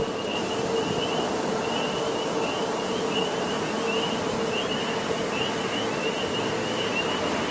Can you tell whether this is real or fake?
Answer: real